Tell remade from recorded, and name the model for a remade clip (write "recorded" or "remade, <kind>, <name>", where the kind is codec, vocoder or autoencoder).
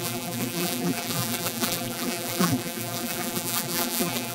remade, vocoder, BigVGAN v2